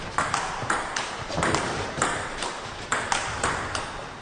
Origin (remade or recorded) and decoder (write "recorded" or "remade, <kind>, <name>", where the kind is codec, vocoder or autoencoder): remade, vocoder, BigVGAN v2